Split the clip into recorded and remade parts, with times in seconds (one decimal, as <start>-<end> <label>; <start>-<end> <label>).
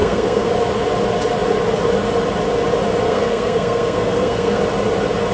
0.0-0.5 remade; 0.5-3.1 recorded; 3.1-4.6 remade; 4.6-5.3 recorded